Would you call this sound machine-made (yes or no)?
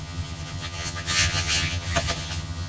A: yes